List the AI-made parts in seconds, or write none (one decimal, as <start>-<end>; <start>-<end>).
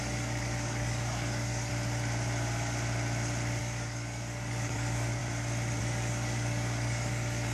0.0-1.7; 3.6-5.2; 5.8-7.5